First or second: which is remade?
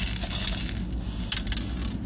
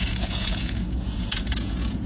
second